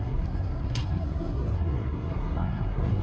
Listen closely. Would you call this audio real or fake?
fake